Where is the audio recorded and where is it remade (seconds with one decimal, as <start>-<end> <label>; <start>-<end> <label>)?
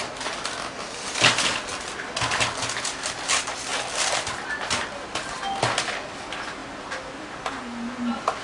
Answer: 0.0-8.4 recorded